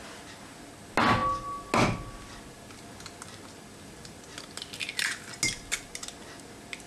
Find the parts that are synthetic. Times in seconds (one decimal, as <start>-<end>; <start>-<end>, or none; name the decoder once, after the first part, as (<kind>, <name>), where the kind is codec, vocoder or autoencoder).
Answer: none